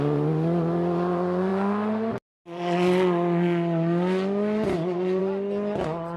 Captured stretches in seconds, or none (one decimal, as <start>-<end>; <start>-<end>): 0.0-6.2